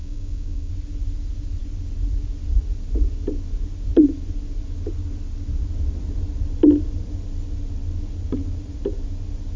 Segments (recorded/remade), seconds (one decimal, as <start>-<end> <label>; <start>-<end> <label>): 0.0-0.7 remade; 0.7-9.6 recorded